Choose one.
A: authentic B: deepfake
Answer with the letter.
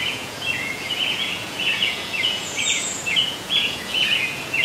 B